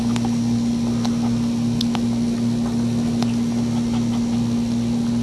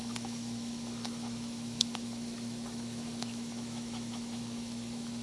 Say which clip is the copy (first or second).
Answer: second